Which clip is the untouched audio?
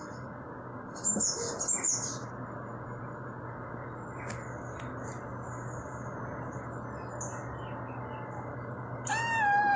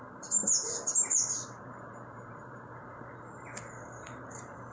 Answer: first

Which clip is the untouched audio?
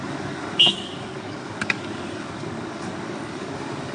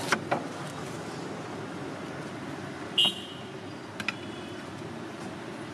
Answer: second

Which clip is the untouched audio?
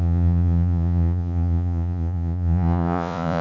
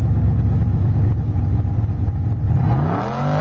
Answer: second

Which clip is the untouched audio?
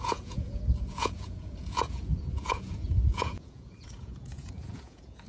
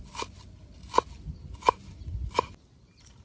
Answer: second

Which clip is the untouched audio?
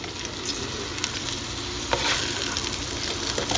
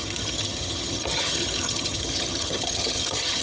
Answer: first